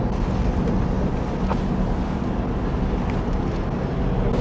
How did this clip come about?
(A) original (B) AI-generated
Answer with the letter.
A